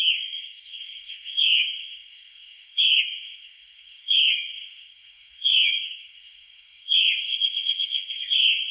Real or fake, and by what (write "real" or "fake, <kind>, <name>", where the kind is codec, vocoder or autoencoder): fake, codec, SNAC